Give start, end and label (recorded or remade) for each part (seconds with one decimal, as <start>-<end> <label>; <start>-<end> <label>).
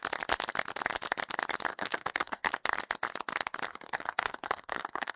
0.0-1.7 recorded; 1.7-2.5 remade; 2.5-3.7 recorded; 3.7-5.2 remade